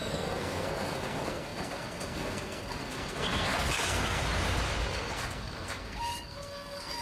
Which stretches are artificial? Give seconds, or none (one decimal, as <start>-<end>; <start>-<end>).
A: 0.0-4.2; 4.9-7.0